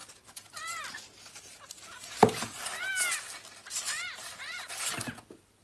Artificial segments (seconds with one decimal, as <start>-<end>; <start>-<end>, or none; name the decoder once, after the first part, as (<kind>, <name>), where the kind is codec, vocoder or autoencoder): 0.0-2.9 (vocoder, BigVGAN v2); 3.6-4.9